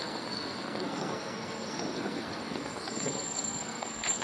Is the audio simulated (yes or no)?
yes